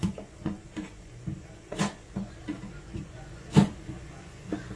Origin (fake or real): fake